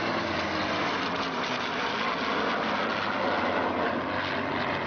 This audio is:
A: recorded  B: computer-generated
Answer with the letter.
A